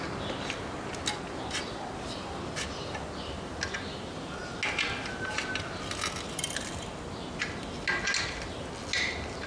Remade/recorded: recorded